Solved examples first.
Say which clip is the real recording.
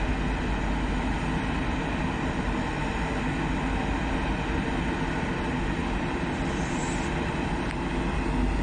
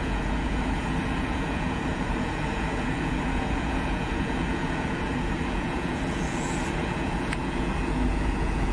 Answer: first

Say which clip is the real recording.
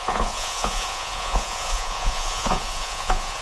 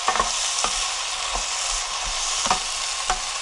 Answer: second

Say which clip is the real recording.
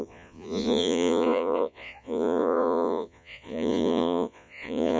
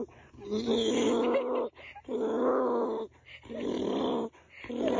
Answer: second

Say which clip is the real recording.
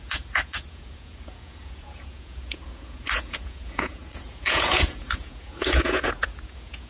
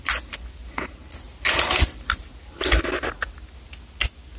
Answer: second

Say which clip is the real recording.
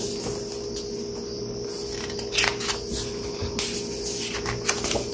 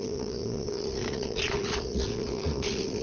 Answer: first